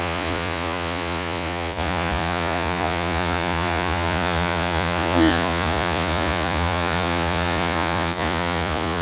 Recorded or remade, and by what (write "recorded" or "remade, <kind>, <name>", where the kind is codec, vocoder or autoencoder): remade, vocoder, Vocos